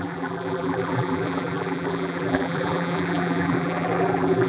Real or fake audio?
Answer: fake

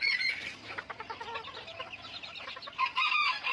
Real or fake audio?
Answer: real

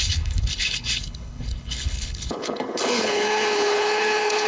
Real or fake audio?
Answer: fake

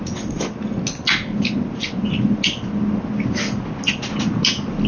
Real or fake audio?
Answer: real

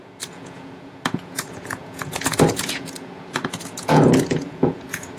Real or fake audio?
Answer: fake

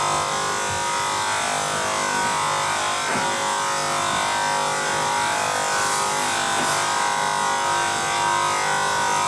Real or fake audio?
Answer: real